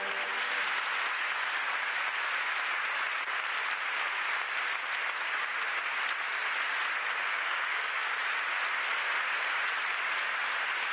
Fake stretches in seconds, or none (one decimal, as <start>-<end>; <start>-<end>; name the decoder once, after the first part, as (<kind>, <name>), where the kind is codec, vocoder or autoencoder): 7.3-8.1 (codec, DAC)